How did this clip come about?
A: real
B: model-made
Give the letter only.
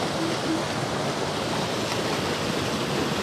A